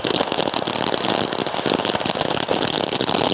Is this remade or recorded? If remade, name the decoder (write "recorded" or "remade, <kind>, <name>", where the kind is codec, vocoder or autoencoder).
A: recorded